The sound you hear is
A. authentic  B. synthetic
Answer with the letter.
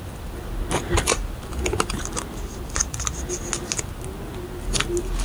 A